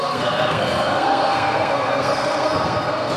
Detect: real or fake fake